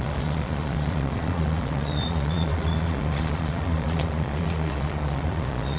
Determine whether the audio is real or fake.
fake